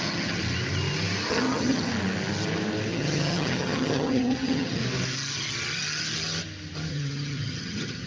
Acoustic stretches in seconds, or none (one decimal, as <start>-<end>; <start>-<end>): 0.4-1.3; 1.9-2.9; 4.8-6.9